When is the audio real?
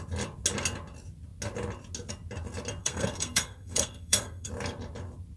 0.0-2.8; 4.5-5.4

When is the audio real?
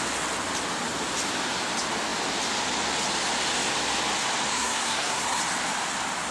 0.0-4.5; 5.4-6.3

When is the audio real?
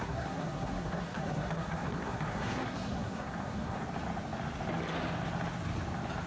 3.8-6.3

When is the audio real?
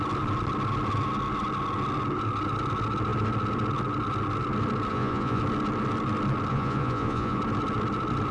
0.0-4.9; 5.4-6.5; 7.4-8.3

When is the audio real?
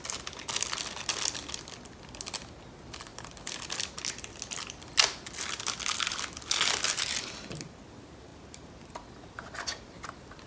0.0-10.5